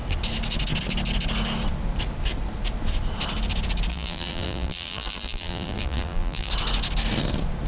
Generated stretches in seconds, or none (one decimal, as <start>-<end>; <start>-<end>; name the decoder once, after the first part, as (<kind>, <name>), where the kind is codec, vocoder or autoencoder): 3.9-6.5 (vocoder, BigVGAN v2)